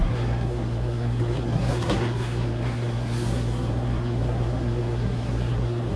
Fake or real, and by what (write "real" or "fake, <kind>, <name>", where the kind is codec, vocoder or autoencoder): fake, codec, SNAC